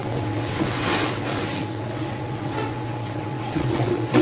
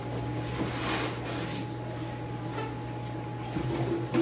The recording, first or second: second